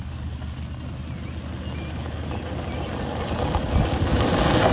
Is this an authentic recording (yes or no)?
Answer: yes